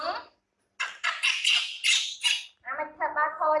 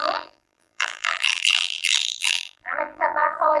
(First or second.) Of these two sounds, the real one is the first